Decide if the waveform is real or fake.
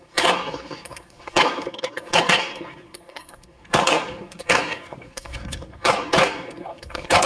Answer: fake